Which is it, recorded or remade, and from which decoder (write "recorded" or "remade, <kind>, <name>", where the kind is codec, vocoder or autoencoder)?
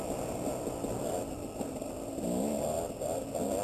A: recorded